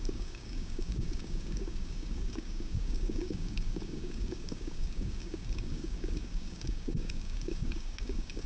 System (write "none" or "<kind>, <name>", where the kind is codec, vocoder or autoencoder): codec, DAC